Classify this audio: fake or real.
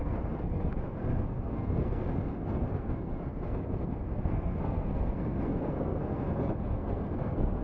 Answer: fake